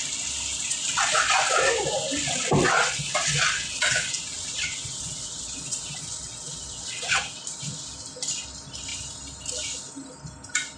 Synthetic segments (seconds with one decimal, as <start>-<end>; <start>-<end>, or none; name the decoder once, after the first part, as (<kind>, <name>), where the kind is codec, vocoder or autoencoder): 2.6-7.4 (vocoder, WaveNeXt)

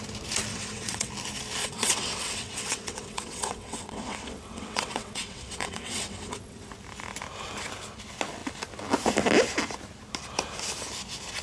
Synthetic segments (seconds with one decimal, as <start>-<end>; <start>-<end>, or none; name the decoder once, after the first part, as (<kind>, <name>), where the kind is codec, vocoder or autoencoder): 0.5-1.1 (vocoder, WaveNeXt); 1.6-6.7

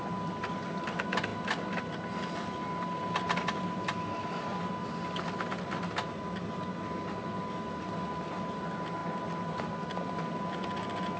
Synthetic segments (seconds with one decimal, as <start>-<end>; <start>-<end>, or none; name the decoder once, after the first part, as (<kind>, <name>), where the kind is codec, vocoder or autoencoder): none

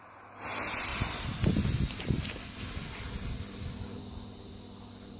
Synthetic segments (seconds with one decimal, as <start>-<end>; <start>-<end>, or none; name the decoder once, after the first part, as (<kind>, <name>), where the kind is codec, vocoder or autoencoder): none

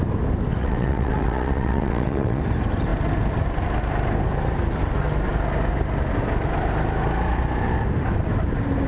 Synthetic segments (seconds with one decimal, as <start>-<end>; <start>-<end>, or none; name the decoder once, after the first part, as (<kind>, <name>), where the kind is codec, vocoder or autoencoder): 0.6-2.4 (vocoder, WaveNeXt)

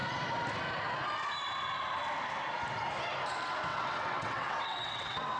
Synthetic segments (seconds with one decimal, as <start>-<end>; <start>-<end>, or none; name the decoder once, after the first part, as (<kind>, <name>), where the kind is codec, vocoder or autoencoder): 3.7-5.4 (vocoder, WaveNeXt)